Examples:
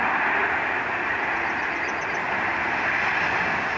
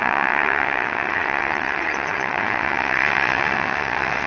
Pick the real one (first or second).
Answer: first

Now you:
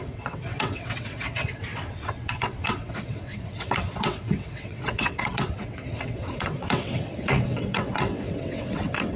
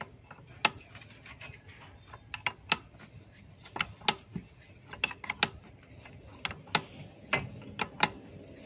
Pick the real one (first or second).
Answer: second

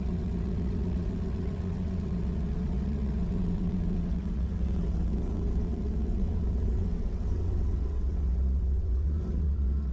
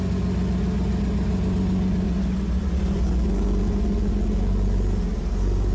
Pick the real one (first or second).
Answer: second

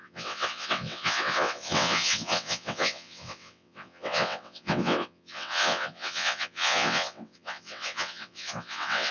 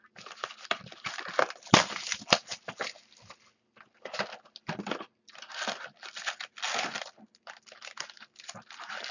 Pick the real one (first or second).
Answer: second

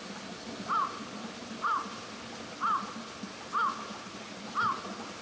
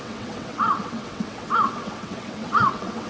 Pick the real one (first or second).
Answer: first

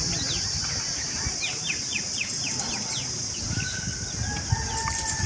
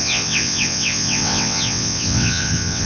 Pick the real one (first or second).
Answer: first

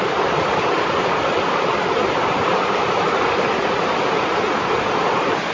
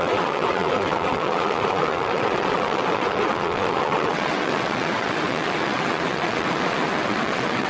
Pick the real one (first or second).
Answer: first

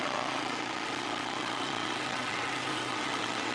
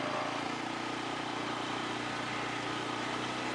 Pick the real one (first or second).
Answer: second